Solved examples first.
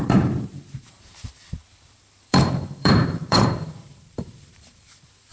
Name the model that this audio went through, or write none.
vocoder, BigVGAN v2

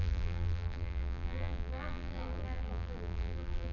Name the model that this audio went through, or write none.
vocoder, BigVGAN v2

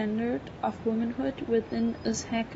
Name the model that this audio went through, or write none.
none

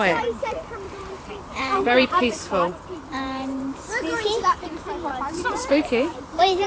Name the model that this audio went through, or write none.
vocoder, BigVGAN v2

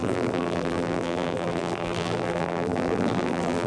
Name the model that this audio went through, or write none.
vocoder, BigVGAN v2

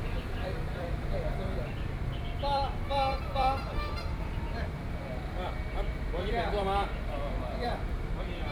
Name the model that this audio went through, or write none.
vocoder, BigVGAN v2